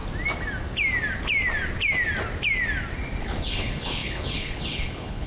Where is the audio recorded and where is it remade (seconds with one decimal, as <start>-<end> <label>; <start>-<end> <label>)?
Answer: 0.0-3.2 recorded; 3.2-5.3 remade